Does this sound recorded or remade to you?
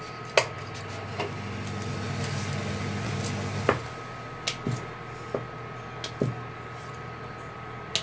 recorded